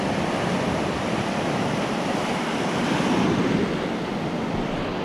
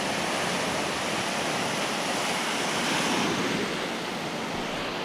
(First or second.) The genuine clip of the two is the second